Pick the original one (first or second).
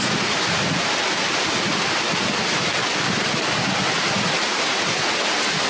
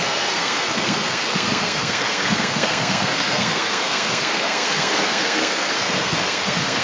first